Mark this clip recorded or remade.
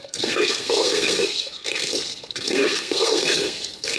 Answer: remade